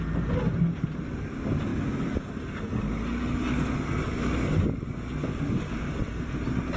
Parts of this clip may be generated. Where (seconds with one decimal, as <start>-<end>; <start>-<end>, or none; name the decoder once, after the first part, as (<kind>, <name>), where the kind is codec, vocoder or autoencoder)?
none